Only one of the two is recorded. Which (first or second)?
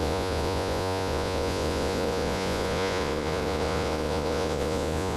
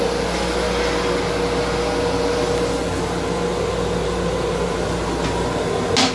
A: second